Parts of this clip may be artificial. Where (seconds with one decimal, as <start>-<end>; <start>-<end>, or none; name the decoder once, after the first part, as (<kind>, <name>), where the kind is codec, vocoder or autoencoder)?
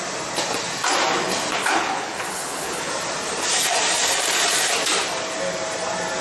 1.6-2.9 (codec, HILCodec)